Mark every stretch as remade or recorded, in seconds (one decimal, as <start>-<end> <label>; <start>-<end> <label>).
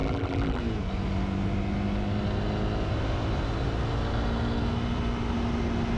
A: 0.0-0.6 remade; 0.6-6.0 recorded